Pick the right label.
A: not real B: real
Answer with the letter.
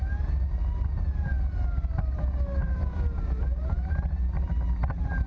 B